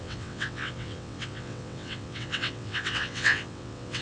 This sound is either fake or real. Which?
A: fake